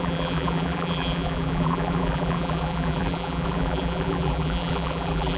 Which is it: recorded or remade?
remade